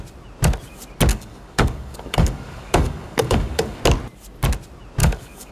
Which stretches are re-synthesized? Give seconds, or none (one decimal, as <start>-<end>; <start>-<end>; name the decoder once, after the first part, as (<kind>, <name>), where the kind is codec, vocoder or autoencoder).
1.1-3.8 (codec, DAC); 5.0-5.5